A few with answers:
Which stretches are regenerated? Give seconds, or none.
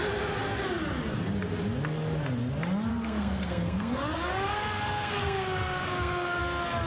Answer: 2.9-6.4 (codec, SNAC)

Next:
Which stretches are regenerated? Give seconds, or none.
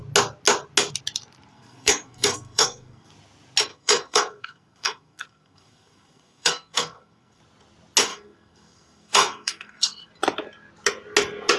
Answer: 1.5-3.1 (codec, SNAC); 3.7-7.4; 8.1-10.1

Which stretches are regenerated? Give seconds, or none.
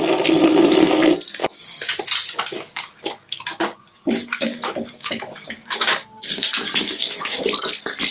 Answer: 1.4-2.0 (codec, DAC); 2.5-7.4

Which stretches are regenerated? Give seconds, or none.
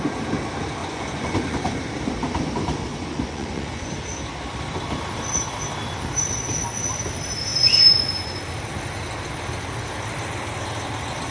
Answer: 0.8-1.9 (vocoder, Vocos); 2.9-3.9; 7.5-8.4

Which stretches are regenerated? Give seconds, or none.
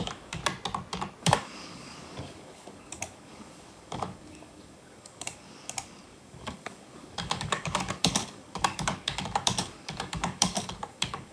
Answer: 0.0-0.4 (codec, DAC); 1.2-11.3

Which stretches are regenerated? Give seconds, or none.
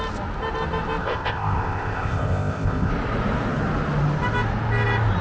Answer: 1.0-2.9 (codec, ZipCodec)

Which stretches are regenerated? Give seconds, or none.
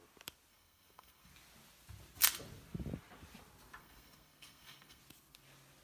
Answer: 0.5-1.3 (codec, SNAC); 3.8-5.0